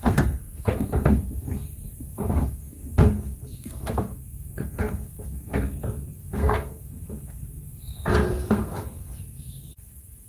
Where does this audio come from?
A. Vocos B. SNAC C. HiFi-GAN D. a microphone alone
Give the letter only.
B